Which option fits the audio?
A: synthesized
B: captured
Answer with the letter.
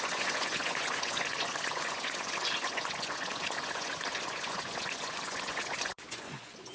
A